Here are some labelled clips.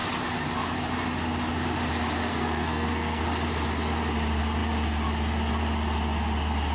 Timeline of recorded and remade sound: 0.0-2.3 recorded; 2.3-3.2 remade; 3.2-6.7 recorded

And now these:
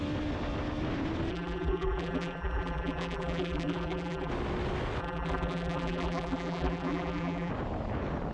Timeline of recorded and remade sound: 0.0-1.3 recorded; 1.3-4.3 remade; 4.3-5.0 recorded; 5.0-7.5 remade; 7.5-8.3 recorded